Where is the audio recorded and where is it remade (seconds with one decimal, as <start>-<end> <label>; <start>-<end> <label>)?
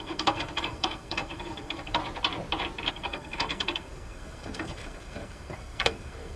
0.0-2.0 remade; 2.0-2.9 recorded; 2.9-6.4 remade